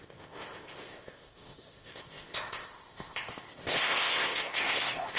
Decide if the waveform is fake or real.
fake